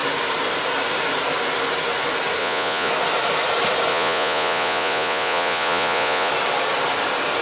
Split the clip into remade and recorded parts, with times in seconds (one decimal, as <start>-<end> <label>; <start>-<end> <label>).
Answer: 0.0-2.4 recorded; 2.4-2.9 remade; 2.9-3.9 recorded; 3.9-6.3 remade; 6.3-7.4 recorded